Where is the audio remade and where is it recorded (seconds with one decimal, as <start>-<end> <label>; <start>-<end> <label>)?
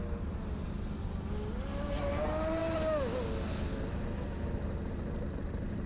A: 0.0-5.9 recorded